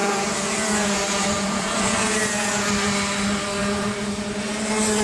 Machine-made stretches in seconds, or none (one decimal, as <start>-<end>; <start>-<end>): 0.0-2.7; 3.6-4.5